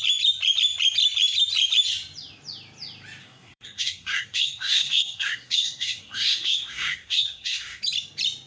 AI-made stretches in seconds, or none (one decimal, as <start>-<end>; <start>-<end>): 3.2-7.8